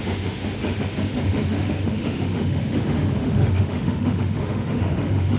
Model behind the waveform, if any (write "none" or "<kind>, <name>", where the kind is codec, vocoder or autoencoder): autoencoder, DAC-VAE